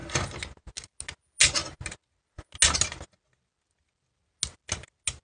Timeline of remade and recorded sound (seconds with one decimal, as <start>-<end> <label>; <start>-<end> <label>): 0.0-5.2 recorded